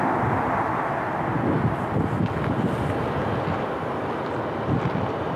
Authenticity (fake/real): real